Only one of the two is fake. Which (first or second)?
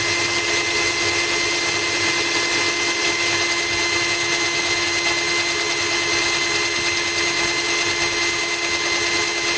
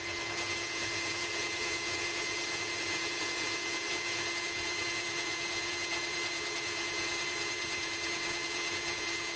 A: second